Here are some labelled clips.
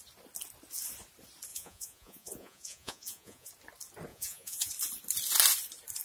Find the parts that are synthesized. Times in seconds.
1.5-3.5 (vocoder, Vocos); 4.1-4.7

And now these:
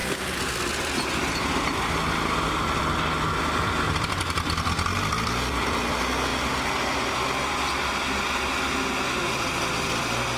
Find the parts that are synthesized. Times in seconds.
none

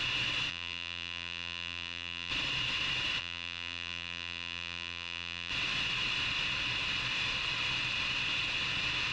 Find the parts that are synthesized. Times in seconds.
0.5-2.3 (vocoder, BigVGAN v2); 3.2-5.5

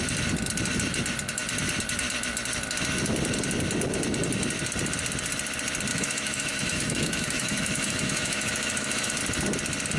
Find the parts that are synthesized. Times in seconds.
5.9-9.2 (autoencoder, DAC-VAE)

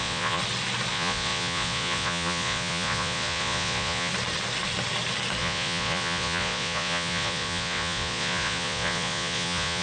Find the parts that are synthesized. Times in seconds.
0.0-0.4 (vocoder, Vocos); 0.9-4.1; 5.4-9.8

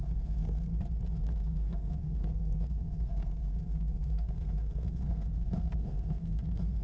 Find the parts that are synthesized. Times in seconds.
0.0-0.7 (codec, SNAC); 1.2-6.8